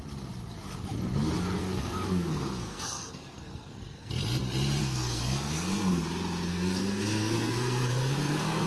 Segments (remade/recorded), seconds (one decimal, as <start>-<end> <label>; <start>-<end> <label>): 0.0-1.6 recorded; 1.6-4.1 remade; 4.1-4.8 recorded; 4.8-6.0 remade; 6.0-6.5 recorded; 6.5-8.7 remade